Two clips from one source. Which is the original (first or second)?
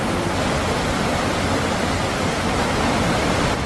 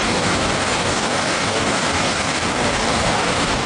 first